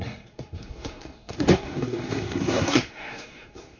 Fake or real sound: fake